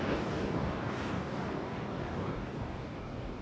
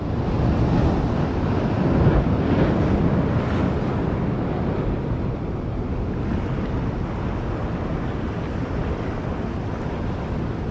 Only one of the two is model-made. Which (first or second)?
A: first